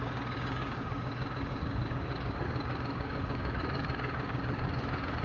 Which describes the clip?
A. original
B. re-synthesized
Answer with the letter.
B